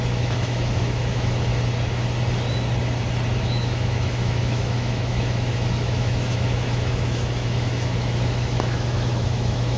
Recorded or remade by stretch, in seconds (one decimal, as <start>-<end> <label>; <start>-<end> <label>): 0.0-1.5 remade; 1.5-3.4 recorded; 3.4-9.8 remade